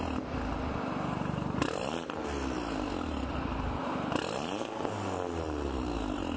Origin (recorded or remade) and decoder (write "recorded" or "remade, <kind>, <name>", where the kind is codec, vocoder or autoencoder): recorded